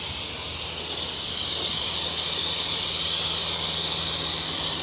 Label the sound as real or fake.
real